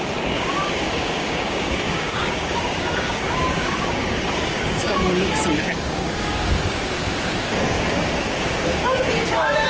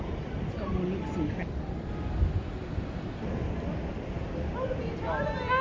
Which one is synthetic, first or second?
first